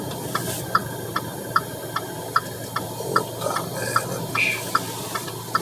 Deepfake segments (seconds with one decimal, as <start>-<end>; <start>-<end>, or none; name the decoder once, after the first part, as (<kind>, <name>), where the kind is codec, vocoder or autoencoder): 0.0-0.8 (vocoder, BigVGAN v2); 4.2-5.6